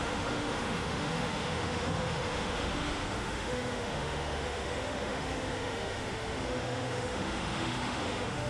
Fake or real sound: fake